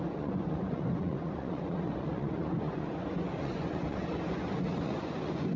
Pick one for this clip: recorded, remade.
remade